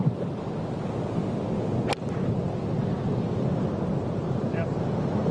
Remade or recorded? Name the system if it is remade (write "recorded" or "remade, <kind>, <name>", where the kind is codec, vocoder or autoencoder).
recorded